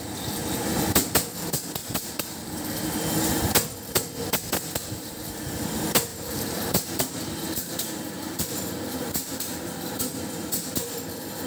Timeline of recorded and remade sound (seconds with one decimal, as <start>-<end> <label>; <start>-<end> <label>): 0.0-1.8 recorded; 1.8-2.6 remade; 2.6-4.8 recorded; 4.8-5.6 remade; 5.6-6.1 recorded; 6.1-10.2 remade; 10.2-11.5 recorded